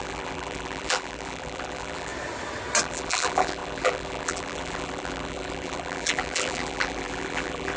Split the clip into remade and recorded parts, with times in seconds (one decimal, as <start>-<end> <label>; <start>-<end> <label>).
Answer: 0.0-2.1 remade; 2.1-2.8 recorded; 2.8-7.8 remade

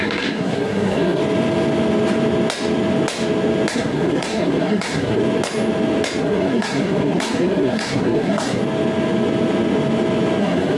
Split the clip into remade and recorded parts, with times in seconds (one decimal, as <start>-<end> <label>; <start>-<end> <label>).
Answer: 0.0-1.2 remade; 1.2-3.7 recorded; 3.7-5.2 remade; 5.2-6.2 recorded; 6.2-8.6 remade; 8.6-10.4 recorded; 10.4-10.8 remade

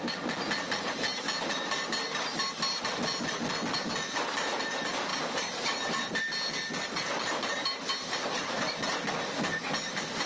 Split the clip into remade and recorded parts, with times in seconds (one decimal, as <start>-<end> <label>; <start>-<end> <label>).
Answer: 0.0-5.1 recorded; 5.1-6.2 remade; 6.2-10.3 recorded

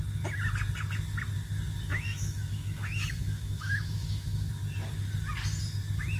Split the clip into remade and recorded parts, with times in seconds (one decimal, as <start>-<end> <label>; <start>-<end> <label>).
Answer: 0.0-1.9 recorded; 1.9-4.5 remade; 4.5-6.2 recorded

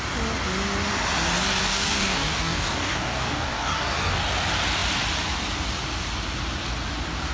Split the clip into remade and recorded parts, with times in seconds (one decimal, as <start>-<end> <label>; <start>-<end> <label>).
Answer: 0.0-1.6 recorded; 1.6-4.2 remade; 4.2-7.3 recorded

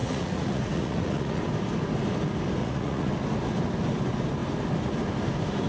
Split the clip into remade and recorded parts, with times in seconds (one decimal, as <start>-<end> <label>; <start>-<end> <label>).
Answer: 0.0-1.4 remade; 1.4-2.6 recorded; 2.6-3.1 remade; 3.1-5.7 recorded

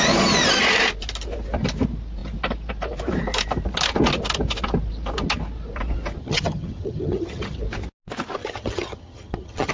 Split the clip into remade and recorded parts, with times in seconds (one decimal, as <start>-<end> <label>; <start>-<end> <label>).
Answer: 0.0-6.2 recorded; 6.2-7.6 remade; 7.6-8.4 recorded; 8.4-9.7 remade

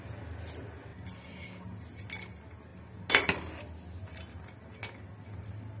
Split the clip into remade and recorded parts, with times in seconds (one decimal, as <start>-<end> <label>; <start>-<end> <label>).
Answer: 0.0-5.8 recorded